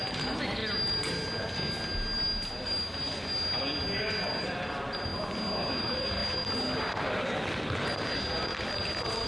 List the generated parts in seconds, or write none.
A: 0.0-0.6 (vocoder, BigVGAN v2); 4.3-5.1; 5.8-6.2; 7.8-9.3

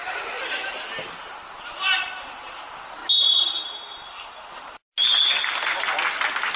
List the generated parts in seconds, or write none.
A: none

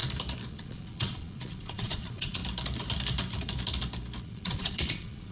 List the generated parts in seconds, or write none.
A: 0.5-2.4 (vocoder, Vocos); 4.2-5.3